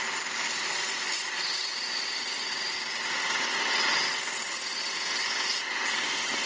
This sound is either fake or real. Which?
fake